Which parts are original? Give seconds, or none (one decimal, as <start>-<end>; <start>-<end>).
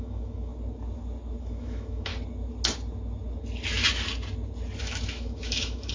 0.5-1.4; 2.1-4.8